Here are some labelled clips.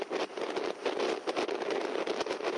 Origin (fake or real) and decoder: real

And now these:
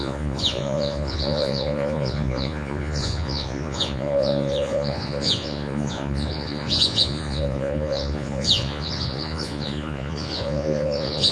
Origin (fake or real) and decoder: fake, vocoder, Vocos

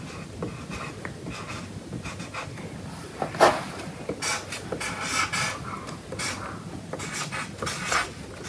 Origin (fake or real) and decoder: real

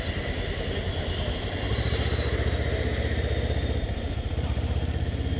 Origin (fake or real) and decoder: real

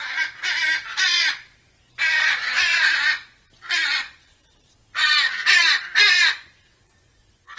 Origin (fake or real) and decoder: fake, vocoder, Vocos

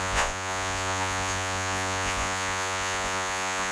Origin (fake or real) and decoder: fake, vocoder, Vocos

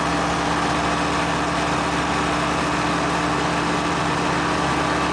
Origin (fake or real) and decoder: real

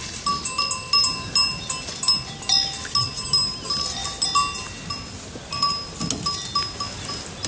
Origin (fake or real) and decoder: real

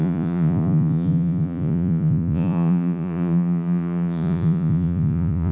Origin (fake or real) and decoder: fake, vocoder, Vocos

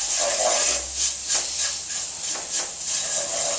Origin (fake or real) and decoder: real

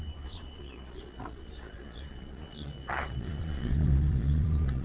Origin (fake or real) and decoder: fake, vocoder, Vocos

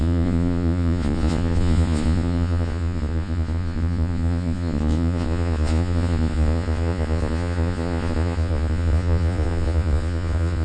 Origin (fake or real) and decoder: fake, vocoder, Vocos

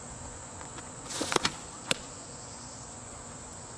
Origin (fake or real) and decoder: fake, vocoder, Vocos